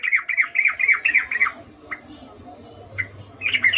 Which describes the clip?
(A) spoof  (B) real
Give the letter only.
B